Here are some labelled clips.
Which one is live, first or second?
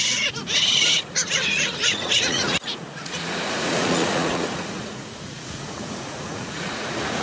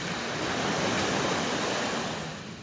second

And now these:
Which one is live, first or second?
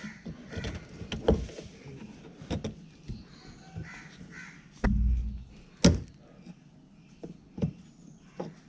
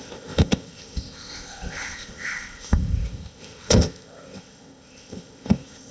first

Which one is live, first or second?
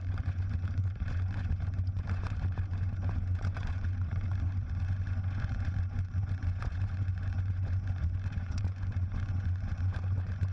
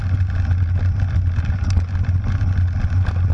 second